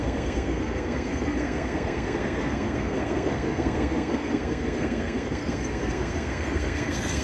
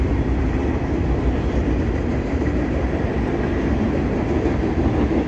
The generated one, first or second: first